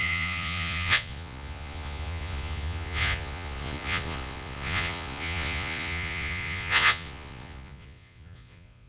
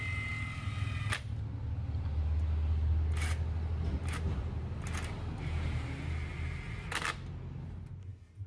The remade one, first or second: first